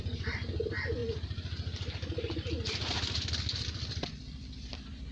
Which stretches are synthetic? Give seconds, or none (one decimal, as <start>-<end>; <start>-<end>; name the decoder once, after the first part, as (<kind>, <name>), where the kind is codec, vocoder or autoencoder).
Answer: none